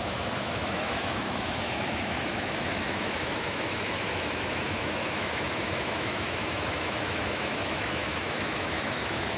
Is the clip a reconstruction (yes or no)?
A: yes